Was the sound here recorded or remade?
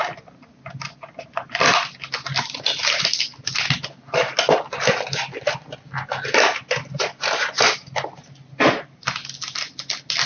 recorded